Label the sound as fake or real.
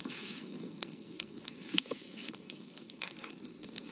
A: fake